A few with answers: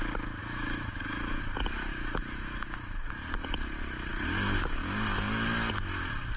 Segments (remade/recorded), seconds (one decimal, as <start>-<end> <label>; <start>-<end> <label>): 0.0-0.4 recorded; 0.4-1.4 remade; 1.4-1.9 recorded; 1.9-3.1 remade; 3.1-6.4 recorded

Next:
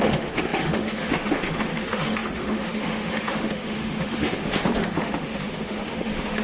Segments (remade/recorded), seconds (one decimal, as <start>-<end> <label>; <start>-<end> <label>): 0.0-6.4 remade

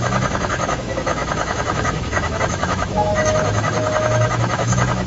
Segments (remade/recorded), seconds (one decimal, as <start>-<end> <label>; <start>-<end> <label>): 0.0-5.1 remade

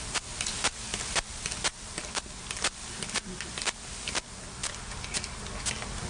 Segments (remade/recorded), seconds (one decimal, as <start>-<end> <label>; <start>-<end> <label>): 0.0-6.1 recorded